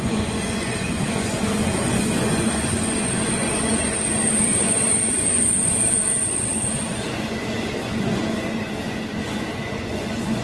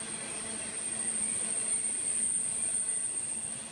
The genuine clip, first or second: second